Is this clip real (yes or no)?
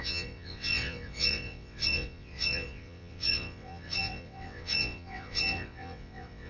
no